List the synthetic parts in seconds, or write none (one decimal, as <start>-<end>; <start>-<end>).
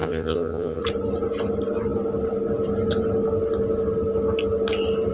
0.0-0.8